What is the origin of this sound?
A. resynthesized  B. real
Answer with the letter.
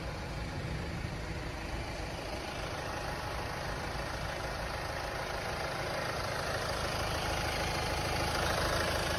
B